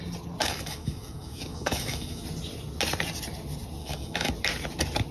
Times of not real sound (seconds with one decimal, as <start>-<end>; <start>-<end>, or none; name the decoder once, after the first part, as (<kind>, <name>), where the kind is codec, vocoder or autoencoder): 0.4-2.2 (autoencoder, DAC-VAE); 3.8-4.3